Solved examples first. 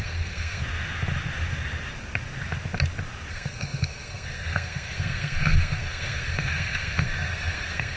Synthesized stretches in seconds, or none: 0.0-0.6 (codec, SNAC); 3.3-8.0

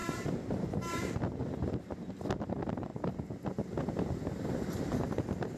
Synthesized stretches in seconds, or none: none

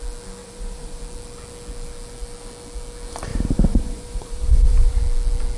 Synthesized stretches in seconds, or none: 0.4-1.0 (vocoder, BigVGAN v2); 3.3-5.0

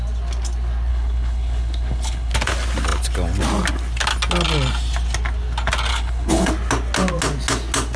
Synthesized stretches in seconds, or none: 0.9-2.3 (codec, HILCodec); 5.9-6.5

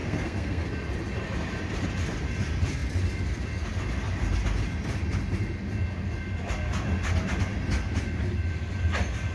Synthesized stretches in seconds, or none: 0.0-0.7 (codec, SNAC)

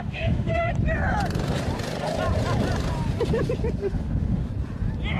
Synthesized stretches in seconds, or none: 0.0-0.7 (autoencoder, DAC-VAE); 3.8-4.5